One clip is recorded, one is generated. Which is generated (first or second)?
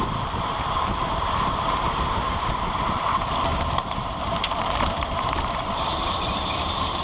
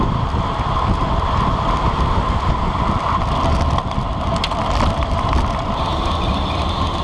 first